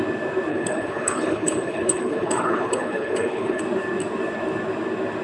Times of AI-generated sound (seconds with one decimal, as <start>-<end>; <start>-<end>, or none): 0.5-3.6